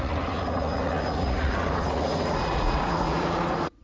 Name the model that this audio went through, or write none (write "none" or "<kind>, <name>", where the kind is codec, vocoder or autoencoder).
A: vocoder, Vocos